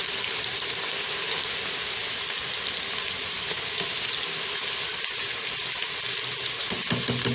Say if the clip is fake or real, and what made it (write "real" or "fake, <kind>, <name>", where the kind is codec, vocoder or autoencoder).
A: real